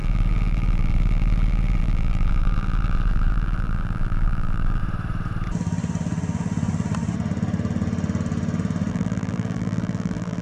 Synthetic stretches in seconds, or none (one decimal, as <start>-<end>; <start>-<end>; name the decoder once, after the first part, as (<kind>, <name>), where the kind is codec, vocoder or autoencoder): 0.0-4.8 (vocoder, BigVGAN v2); 8.9-10.4